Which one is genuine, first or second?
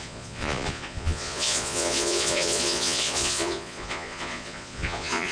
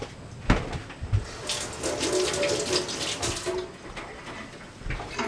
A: second